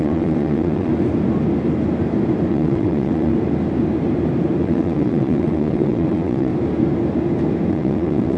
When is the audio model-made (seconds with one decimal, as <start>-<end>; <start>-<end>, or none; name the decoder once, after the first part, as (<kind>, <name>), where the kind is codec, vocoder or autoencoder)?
0.0-0.9 (vocoder, WaveNeXt); 2.5-3.3; 4.6-6.5; 7.7-8.4